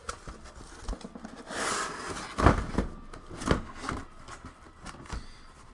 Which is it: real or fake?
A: real